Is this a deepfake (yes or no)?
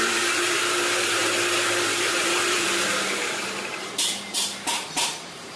yes